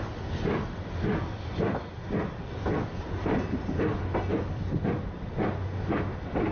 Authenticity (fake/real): real